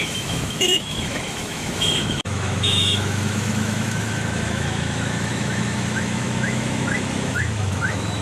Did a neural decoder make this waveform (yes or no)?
yes